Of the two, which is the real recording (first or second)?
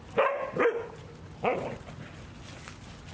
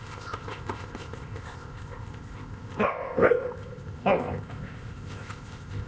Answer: first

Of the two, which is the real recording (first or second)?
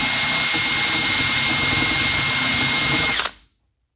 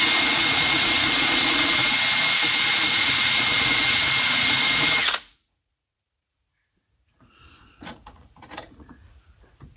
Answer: first